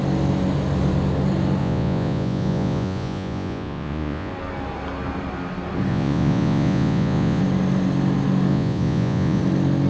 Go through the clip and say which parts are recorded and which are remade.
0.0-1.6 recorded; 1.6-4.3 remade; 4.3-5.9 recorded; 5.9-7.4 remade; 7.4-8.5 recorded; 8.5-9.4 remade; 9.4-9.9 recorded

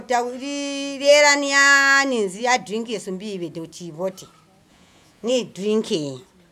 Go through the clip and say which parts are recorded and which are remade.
0.0-4.7 recorded; 4.7-5.3 remade; 5.3-6.5 recorded

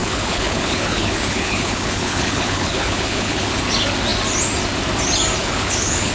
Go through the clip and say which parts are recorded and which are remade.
0.0-3.6 remade; 3.6-5.4 recorded; 5.4-6.1 remade

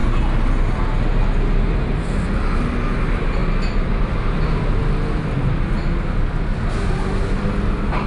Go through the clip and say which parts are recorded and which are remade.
0.0-8.1 recorded

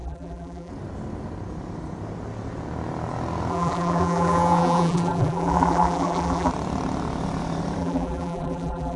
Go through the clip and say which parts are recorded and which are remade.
0.0-0.7 remade; 0.7-3.5 recorded; 3.5-6.5 remade; 6.5-7.8 recorded; 7.8-9.0 remade

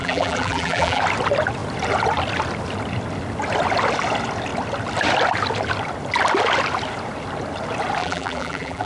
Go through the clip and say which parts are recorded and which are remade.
0.0-1.0 remade; 1.0-8.0 recorded; 8.0-8.9 remade

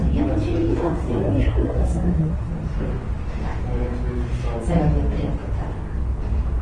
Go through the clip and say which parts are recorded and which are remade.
0.0-0.7 recorded; 0.7-2.5 remade; 2.5-6.6 recorded

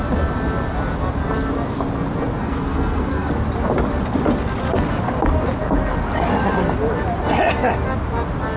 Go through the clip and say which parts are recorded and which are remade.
0.0-2.4 recorded; 2.4-3.3 remade; 3.3-8.6 recorded